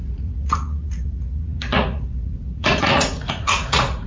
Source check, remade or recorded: remade